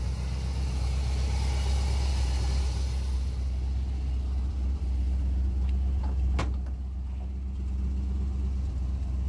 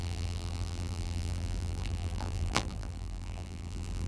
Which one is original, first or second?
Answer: first